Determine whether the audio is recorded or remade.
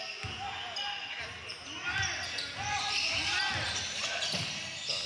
recorded